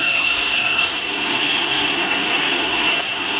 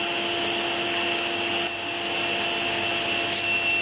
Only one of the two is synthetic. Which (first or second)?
first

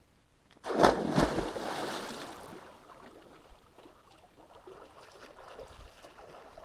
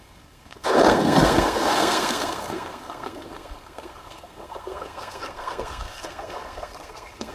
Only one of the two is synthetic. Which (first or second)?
second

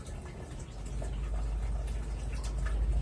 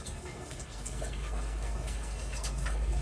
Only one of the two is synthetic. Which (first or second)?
second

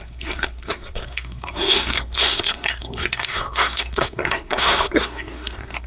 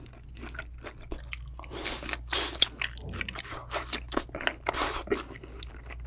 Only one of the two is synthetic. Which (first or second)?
first